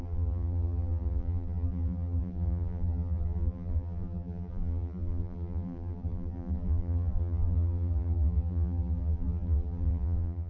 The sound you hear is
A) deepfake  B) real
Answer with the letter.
A